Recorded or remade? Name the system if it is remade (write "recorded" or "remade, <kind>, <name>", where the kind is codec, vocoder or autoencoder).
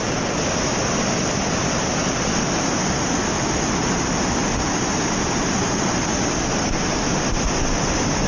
recorded